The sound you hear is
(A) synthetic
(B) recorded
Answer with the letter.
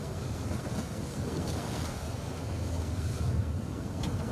A